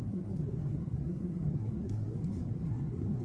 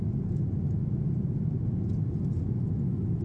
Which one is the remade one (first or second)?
first